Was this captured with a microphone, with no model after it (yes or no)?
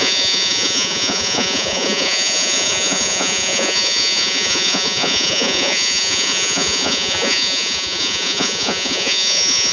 no